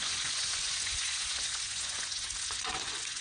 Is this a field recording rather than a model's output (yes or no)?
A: no